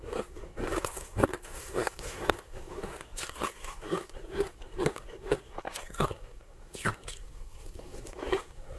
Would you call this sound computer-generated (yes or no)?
yes